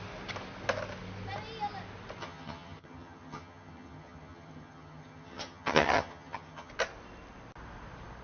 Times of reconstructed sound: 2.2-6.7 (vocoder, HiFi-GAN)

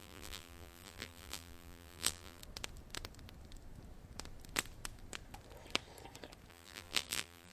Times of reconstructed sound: 0.0-2.4 (vocoder, BigVGAN v2); 6.5-7.5

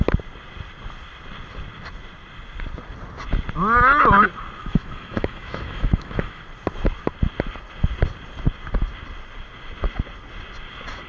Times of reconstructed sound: 4.6-6.4 (autoencoder, DAC-VAE)

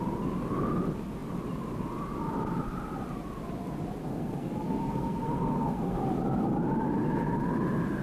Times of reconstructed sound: 4.0-6.0 (codec, SNAC)

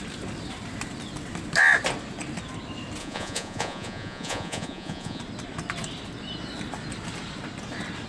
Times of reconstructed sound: 3.0-5.2 (vocoder, Vocos)

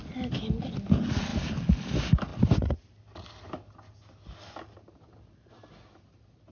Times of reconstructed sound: none

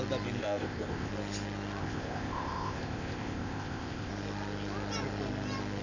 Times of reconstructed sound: 0.4-1.1 (codec, ZipCodec); 1.8-4.1